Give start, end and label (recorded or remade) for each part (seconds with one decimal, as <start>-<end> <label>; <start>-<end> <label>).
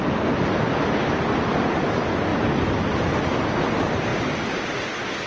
0.0-5.3 recorded